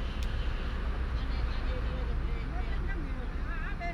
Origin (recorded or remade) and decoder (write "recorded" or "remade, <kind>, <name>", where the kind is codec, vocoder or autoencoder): recorded